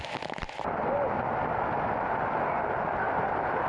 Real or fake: real